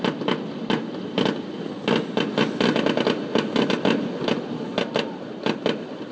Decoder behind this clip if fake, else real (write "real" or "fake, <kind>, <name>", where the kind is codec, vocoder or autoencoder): real